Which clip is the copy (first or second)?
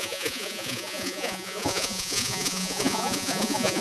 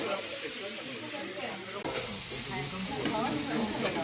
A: first